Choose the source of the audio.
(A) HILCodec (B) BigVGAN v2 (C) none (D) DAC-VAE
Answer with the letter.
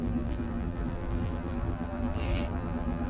B